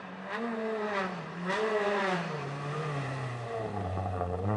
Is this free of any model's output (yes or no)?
no